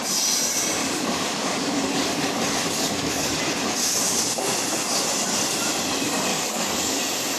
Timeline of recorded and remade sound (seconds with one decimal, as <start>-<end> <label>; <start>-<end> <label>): 0.0-0.8 recorded; 0.8-3.4 remade; 3.4-6.3 recorded; 6.3-7.0 remade; 7.0-7.4 recorded